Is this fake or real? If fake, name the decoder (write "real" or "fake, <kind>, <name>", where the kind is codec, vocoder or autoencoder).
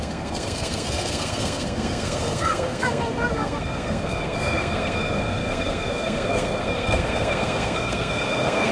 fake, codec, SNAC